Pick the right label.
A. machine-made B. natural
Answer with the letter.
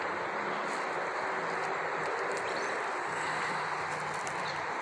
B